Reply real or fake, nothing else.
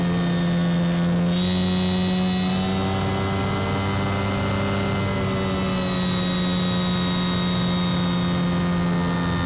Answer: real